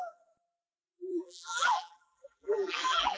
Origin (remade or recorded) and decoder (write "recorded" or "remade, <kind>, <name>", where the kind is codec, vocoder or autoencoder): remade, vocoder, BigVGAN v2